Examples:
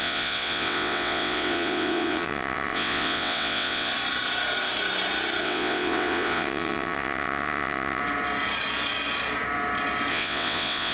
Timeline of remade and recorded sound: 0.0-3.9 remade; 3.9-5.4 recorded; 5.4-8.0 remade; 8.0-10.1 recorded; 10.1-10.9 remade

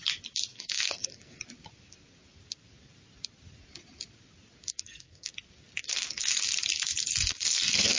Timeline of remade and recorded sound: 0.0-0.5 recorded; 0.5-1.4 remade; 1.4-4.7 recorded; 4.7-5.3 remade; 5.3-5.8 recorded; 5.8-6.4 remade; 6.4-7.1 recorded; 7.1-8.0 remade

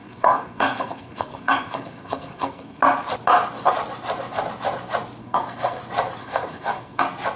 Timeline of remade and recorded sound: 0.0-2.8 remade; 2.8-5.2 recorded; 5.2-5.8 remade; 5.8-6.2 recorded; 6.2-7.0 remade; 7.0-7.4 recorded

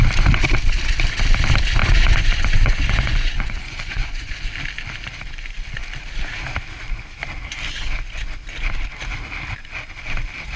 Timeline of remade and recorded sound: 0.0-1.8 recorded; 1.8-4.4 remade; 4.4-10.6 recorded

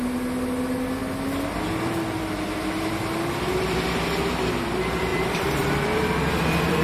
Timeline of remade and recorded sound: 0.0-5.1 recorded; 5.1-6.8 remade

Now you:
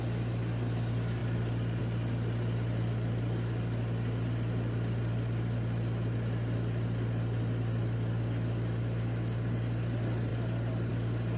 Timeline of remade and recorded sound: 0.0-11.4 recorded

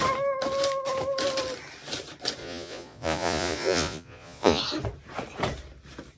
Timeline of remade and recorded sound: 0.0-2.4 recorded; 2.4-4.6 remade; 4.6-6.2 recorded

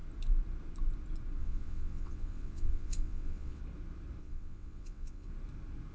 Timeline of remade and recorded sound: 0.0-1.4 recorded; 1.4-3.6 remade; 3.6-4.2 recorded; 4.2-5.3 remade; 5.3-5.9 recorded